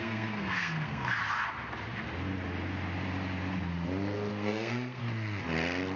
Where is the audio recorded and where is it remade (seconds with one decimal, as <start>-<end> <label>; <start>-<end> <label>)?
0.0-1.2 remade; 1.2-4.3 recorded; 4.3-5.0 remade; 5.0-6.0 recorded